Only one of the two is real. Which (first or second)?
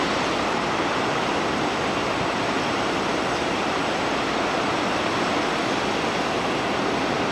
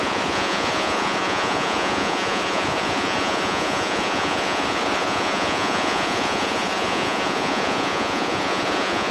first